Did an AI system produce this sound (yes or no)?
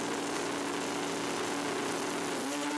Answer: no